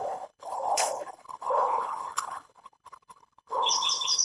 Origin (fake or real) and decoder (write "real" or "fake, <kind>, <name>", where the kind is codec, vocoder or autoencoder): fake, codec, HILCodec